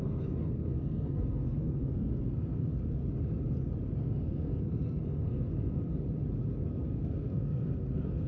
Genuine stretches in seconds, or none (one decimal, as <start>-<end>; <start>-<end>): 3.0-4.0; 5.8-6.7